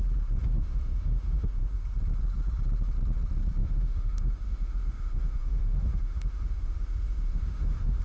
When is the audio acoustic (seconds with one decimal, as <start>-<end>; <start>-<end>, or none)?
0.0-0.4; 1.8-3.6